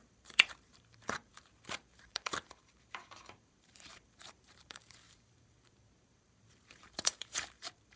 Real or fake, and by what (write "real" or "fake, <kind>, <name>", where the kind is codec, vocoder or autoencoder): fake, vocoder, BigVGAN v2